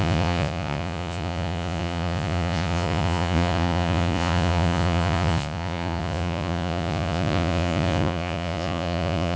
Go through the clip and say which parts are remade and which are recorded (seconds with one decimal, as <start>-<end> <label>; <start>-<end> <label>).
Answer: 0.0-9.4 remade